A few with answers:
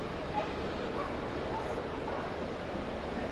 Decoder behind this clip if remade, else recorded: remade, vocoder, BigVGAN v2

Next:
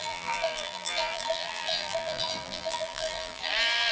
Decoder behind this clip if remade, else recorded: remade, vocoder, BigVGAN v2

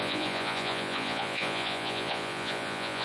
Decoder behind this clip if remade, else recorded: remade, vocoder, Vocos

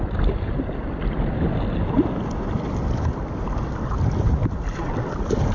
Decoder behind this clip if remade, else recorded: recorded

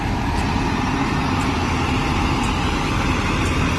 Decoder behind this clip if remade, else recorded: recorded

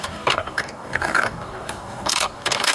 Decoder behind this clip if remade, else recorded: remade, codec, DAC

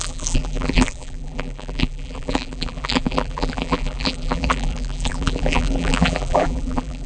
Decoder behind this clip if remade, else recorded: remade, vocoder, BigVGAN v2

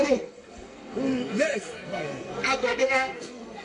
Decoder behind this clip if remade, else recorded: remade, codec, SNAC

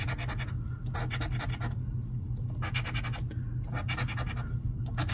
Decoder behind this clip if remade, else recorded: recorded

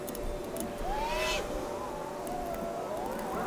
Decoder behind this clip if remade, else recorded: recorded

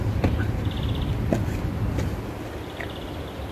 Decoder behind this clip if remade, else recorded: recorded